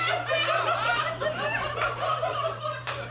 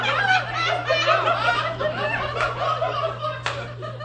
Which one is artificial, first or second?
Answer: first